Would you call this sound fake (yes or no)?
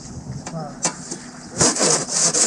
no